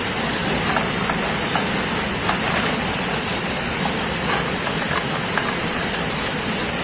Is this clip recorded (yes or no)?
yes